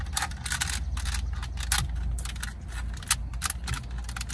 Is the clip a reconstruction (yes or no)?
no